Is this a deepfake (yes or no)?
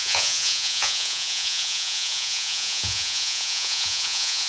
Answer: yes